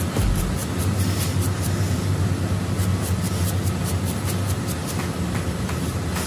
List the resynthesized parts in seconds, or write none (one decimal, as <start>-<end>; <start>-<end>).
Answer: none